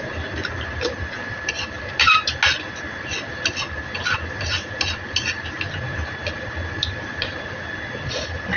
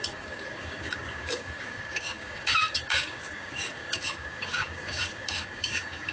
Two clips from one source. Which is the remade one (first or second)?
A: second